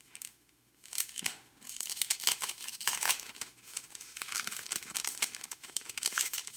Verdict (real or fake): fake